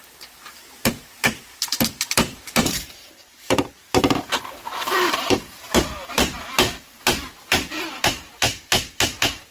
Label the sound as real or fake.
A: fake